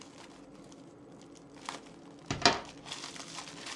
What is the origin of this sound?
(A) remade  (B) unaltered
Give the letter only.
B